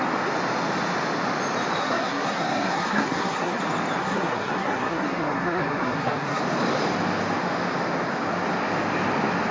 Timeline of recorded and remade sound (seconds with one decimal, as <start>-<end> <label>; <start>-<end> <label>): 0.0-1.8 recorded; 1.8-3.6 remade; 3.6-4.0 recorded; 4.0-6.4 remade; 6.4-9.5 recorded